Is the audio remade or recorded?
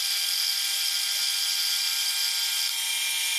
recorded